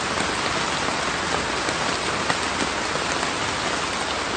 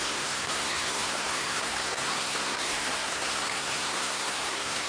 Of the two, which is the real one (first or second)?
first